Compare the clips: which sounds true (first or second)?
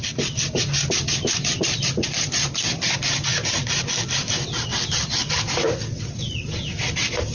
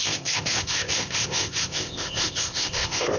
first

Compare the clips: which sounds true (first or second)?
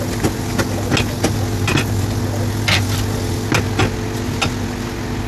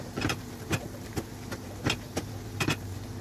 first